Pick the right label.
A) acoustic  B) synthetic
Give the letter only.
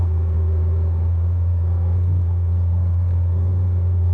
B